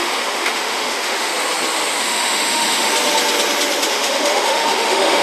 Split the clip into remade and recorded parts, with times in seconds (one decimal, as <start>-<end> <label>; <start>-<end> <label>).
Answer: 0.0-1.3 remade; 1.3-2.0 recorded; 2.0-2.9 remade; 2.9-3.9 recorded; 3.9-5.2 remade

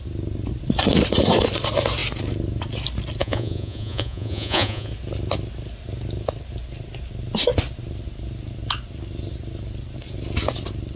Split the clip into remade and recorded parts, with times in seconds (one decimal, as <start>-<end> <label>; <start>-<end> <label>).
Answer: 0.0-3.2 recorded; 3.2-4.9 remade; 4.9-11.0 recorded